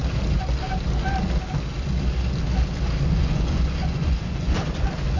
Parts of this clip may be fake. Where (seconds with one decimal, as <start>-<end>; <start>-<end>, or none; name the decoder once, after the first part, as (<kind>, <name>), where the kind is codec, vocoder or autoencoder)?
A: 3.1-5.2 (vocoder, Vocos)